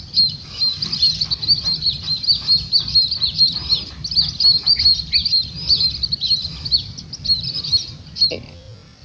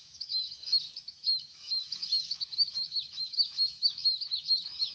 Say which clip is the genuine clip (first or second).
first